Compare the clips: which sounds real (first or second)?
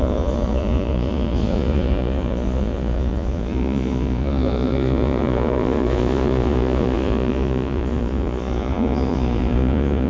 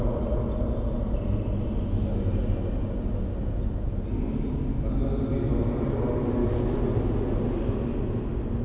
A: second